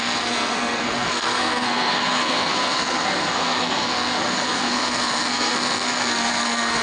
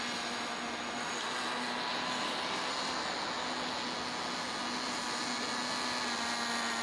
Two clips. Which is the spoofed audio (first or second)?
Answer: first